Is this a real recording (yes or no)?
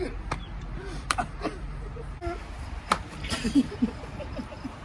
no